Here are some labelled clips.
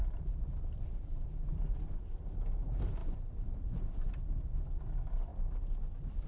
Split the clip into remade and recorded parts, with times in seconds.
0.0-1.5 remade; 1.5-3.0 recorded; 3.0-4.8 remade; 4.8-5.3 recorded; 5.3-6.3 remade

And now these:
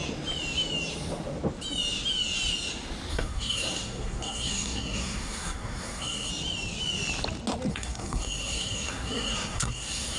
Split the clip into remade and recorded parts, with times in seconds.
0.0-3.1 recorded; 3.1-6.3 remade; 6.3-7.7 recorded; 7.7-10.2 remade

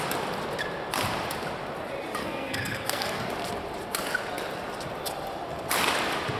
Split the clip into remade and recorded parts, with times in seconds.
0.0-2.2 recorded; 2.2-3.3 remade; 3.3-6.4 recorded

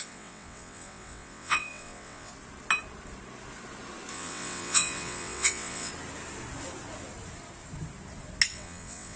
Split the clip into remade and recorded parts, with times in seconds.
0.0-2.3 remade; 2.3-4.1 recorded; 4.1-5.9 remade; 5.9-8.5 recorded; 8.5-9.2 remade

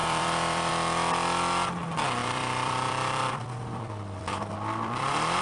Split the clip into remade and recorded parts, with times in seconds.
0.0-0.7 remade; 0.7-2.2 recorded; 2.2-5.4 remade

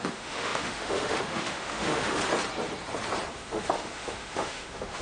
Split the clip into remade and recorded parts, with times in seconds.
0.0-2.2 remade; 2.2-3.3 recorded; 3.3-5.0 remade

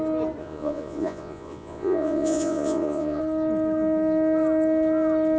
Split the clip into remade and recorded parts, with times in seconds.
0.0-0.4 recorded; 0.4-3.2 remade; 3.2-5.4 recorded

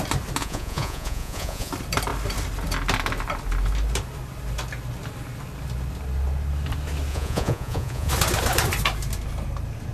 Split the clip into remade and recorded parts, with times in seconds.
0.0-0.4 recorded; 0.4-1.7 remade; 1.7-7.1 recorded; 7.1-8.1 remade; 8.1-9.9 recorded